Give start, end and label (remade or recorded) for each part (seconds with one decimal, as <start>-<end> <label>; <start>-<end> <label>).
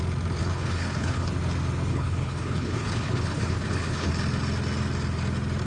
0.0-0.4 recorded; 0.4-1.3 remade; 1.3-1.9 recorded; 1.9-4.1 remade; 4.1-5.7 recorded